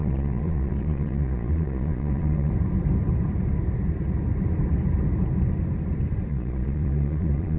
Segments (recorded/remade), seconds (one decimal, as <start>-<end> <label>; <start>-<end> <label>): 0.0-2.5 remade; 2.5-6.3 recorded; 6.3-7.6 remade